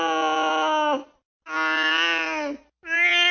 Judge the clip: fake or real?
real